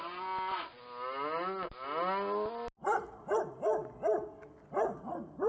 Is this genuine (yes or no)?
yes